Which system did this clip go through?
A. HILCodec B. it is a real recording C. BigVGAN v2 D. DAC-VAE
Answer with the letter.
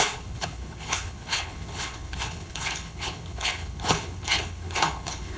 A